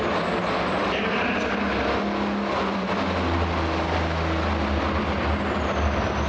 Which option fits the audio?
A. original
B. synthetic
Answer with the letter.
A